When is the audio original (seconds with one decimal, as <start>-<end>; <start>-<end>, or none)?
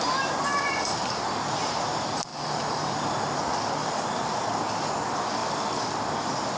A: 0.0-0.5; 1.2-2.3; 3.4-6.6